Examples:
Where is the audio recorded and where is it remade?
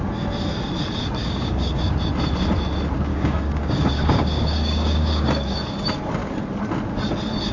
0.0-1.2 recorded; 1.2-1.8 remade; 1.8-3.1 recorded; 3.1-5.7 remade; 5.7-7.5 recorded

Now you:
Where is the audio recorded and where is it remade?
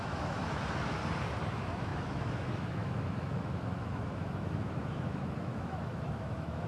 0.0-1.0 remade; 1.0-1.5 recorded; 1.5-6.7 remade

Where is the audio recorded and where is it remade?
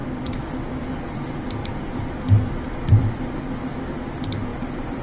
0.0-1.6 recorded; 1.6-3.4 remade; 3.4-4.5 recorded; 4.5-5.0 remade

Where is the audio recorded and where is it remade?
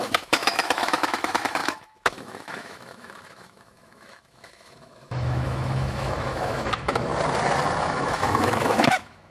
0.0-7.1 remade; 7.1-7.8 recorded; 7.8-9.3 remade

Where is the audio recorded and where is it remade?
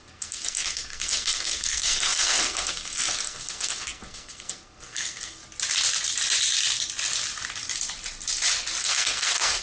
0.0-5.4 remade; 5.4-8.8 recorded; 8.8-9.6 remade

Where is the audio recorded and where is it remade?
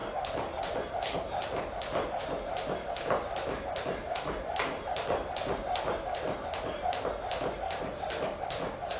0.0-9.0 recorded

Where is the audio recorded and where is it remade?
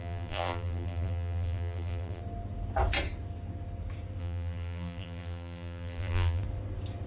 0.0-2.2 remade; 2.2-4.2 recorded; 4.2-6.4 remade; 6.4-7.1 recorded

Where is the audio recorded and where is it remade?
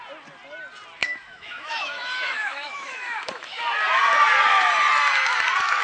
0.0-1.0 recorded; 1.0-3.6 remade; 3.6-5.8 recorded